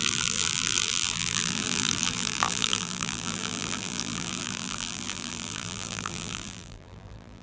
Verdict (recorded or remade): remade